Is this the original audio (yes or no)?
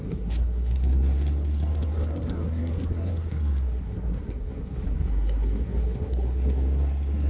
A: no